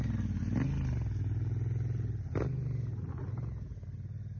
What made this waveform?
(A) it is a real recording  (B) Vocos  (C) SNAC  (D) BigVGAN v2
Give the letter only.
A